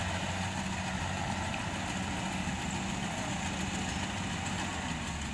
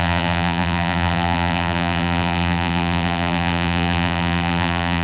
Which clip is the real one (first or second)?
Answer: first